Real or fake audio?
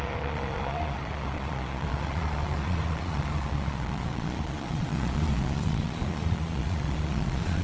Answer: fake